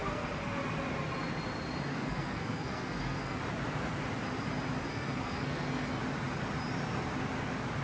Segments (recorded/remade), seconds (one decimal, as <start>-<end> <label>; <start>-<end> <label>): 0.0-0.6 remade; 0.6-1.9 recorded; 1.9-3.4 remade; 3.4-4.9 recorded; 4.9-6.0 remade; 6.0-7.8 recorded